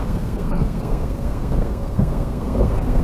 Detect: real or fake fake